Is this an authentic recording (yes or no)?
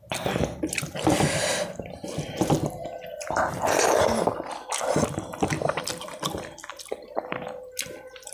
no